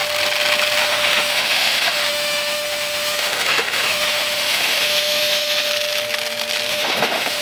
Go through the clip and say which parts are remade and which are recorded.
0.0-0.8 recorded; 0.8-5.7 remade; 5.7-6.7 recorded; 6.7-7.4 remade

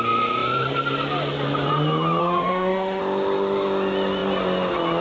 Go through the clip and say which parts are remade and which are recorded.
0.0-2.2 recorded; 2.2-3.0 remade; 3.0-5.0 recorded

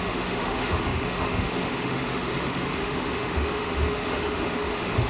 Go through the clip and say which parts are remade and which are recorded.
0.0-5.1 remade

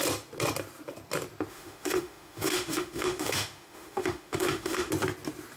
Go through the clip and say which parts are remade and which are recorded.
0.0-1.5 recorded; 1.5-4.9 remade; 4.9-5.6 recorded

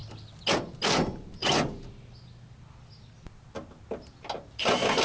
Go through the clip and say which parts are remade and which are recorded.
0.0-5.0 recorded

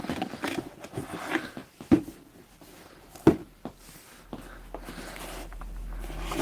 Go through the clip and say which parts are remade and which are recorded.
0.0-6.4 recorded

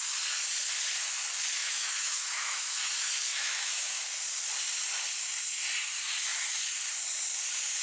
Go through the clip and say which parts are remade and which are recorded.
0.0-1.6 recorded; 1.6-2.9 remade; 2.9-3.3 recorded; 3.3-4.0 remade; 4.0-7.8 recorded